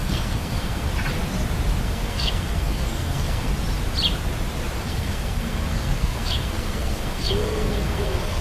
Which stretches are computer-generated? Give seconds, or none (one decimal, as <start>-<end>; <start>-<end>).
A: 0.0-0.9; 1.8-3.5; 4.8-8.4